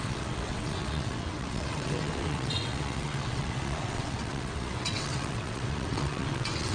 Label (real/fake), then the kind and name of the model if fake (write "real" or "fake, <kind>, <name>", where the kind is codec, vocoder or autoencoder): fake, vocoder, WaveNeXt